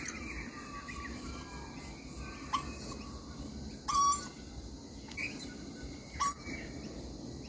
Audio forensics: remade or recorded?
recorded